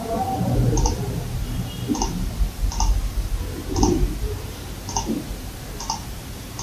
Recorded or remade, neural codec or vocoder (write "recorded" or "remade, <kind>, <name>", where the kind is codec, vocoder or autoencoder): remade, vocoder, BigVGAN v2